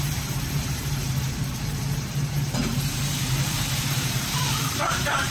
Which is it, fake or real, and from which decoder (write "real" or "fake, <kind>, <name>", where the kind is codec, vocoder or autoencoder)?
fake, vocoder, BigVGAN v2